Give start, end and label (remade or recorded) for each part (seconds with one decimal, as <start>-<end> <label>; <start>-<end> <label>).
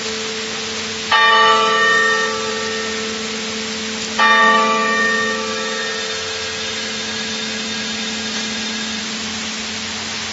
0.0-1.3 recorded; 1.3-2.5 remade; 2.5-4.4 recorded; 4.4-9.0 remade; 9.0-10.3 recorded